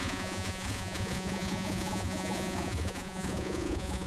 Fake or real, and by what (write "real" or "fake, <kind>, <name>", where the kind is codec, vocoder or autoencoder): fake, vocoder, Vocos